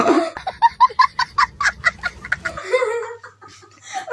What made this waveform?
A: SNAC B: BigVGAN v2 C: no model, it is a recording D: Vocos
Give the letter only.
C